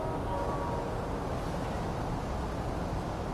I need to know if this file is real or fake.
real